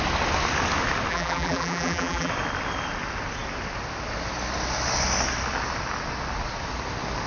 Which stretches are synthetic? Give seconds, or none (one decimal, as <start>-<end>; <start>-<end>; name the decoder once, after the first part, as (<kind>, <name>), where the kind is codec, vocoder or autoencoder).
1.1-2.3 (vocoder, BigVGAN v2)